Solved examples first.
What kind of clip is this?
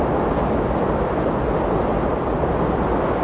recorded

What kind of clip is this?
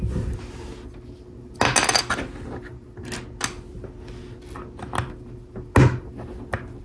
recorded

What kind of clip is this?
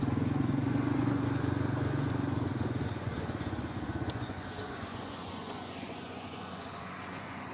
remade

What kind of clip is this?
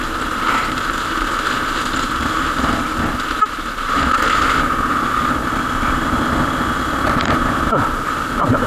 recorded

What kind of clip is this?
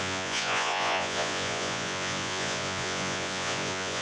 remade